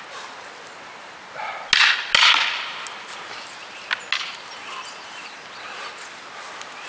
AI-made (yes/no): no